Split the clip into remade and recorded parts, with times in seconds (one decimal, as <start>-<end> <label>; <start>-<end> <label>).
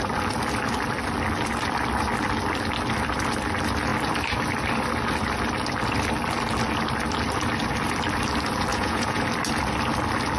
0.0-8.7 recorded; 8.7-9.2 remade; 9.2-10.4 recorded